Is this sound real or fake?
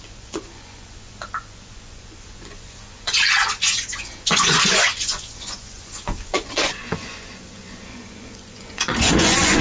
fake